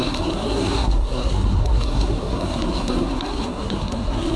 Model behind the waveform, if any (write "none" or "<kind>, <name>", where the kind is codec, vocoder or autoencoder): codec, SNAC